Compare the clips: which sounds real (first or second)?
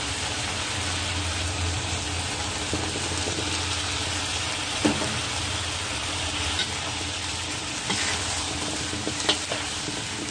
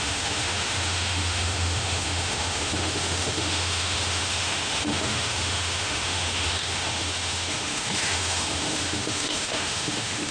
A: first